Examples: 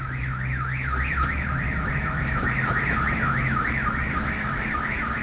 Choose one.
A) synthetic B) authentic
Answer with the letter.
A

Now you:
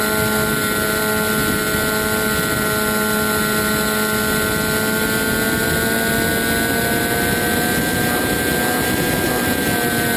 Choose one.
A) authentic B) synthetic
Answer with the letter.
A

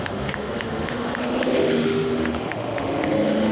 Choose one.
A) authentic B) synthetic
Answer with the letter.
B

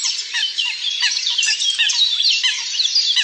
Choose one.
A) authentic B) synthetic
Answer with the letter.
A